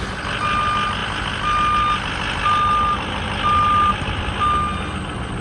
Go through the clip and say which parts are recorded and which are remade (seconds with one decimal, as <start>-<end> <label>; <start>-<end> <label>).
0.0-5.4 recorded